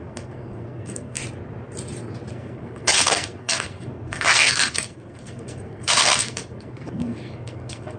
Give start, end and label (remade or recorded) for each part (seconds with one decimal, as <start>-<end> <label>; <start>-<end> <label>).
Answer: 0.0-1.2 remade; 1.2-2.3 recorded; 2.3-8.0 remade